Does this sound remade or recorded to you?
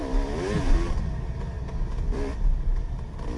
recorded